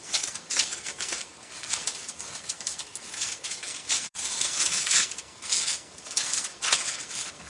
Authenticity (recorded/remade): remade